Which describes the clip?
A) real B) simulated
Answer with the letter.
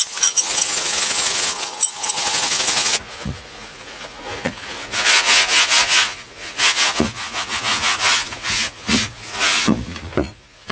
B